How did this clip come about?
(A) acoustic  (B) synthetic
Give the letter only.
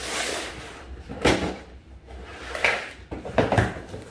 B